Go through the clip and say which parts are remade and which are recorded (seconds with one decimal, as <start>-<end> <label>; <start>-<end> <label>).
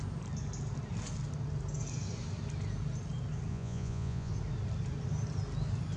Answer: 0.0-3.5 recorded; 3.5-4.3 remade; 4.3-6.0 recorded